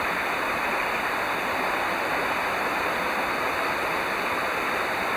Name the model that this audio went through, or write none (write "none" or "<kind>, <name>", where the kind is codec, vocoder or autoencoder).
none